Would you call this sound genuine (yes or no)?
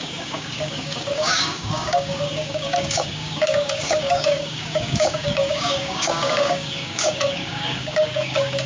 no